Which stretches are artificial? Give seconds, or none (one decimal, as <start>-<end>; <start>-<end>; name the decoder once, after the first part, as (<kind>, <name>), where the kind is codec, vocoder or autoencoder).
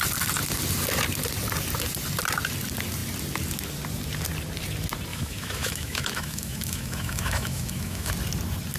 5.1-8.1 (autoencoder, DAC-VAE)